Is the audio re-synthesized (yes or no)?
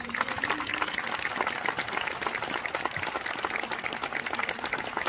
no